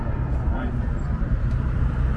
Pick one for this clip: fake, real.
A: real